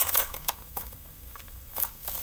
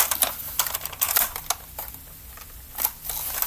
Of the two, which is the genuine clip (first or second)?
second